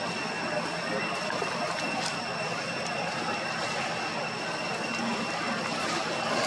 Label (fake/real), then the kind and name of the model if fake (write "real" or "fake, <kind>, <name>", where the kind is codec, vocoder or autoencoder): real